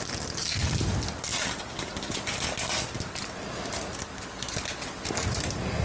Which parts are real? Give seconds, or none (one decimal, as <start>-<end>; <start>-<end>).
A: 0.0-5.8